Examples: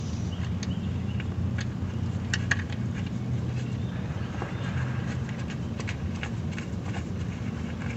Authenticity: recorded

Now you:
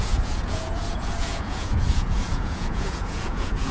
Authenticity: remade